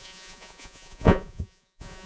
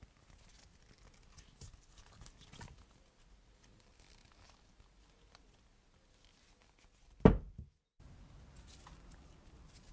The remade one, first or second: first